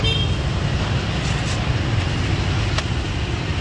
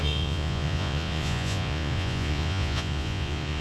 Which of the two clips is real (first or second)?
first